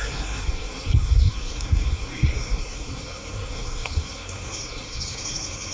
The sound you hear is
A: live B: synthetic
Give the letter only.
B